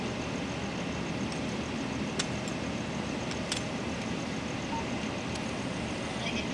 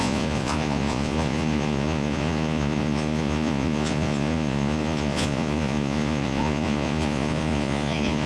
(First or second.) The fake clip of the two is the second